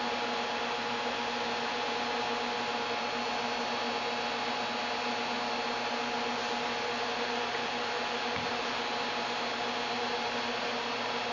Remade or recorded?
recorded